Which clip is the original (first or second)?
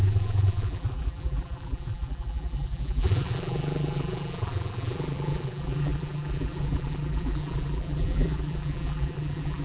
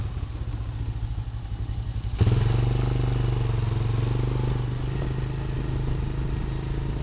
second